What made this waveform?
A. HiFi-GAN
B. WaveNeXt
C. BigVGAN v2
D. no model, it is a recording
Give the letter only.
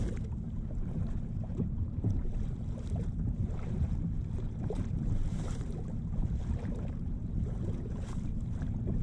C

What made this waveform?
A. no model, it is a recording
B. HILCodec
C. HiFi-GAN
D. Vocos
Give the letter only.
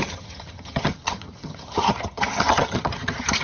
C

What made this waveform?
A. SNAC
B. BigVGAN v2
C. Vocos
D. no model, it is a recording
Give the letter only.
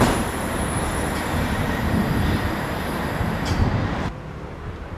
B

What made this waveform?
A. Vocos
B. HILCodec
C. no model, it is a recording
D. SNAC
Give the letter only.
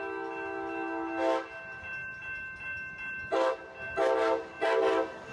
C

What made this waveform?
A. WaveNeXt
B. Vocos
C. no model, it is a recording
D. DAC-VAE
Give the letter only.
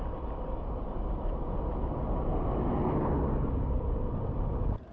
C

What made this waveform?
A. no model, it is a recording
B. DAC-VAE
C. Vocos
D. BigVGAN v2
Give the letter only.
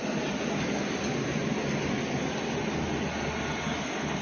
A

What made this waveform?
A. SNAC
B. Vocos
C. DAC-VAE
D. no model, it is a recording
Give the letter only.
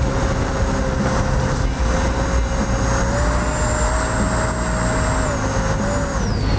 D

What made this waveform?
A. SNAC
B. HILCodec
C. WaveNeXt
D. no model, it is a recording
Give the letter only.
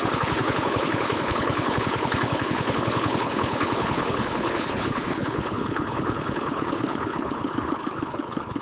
B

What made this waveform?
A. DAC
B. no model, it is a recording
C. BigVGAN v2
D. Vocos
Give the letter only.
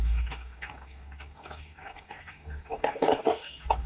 A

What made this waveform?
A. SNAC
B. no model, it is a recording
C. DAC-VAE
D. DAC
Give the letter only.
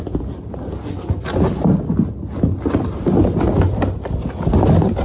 B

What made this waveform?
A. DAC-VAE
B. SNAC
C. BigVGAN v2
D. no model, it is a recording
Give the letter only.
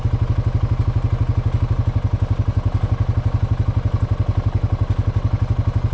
D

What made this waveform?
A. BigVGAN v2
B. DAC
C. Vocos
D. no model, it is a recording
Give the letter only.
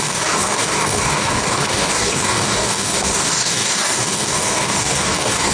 B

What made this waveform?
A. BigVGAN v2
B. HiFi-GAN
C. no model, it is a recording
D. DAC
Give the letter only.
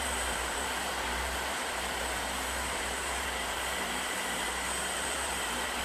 A